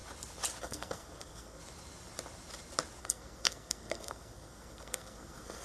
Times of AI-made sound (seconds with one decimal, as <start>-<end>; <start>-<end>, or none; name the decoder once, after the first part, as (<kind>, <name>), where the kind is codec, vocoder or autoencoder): 0.6-1.6 (codec, SNAC); 3.0-5.6